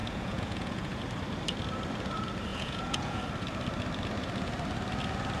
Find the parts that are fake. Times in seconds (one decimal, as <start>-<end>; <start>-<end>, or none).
0.0-1.0; 2.5-3.2